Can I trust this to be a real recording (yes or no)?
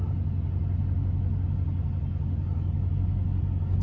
yes